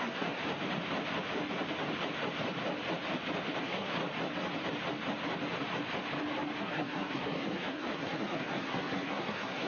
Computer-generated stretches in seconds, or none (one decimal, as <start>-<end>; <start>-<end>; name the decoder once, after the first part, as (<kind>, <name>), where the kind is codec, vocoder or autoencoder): 0.0-0.4 (codec, SNAC); 3.6-4.0; 6.6-9.7